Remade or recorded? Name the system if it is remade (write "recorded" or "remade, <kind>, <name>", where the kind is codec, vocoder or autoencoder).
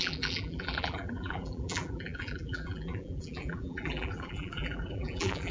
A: remade, vocoder, BigVGAN v2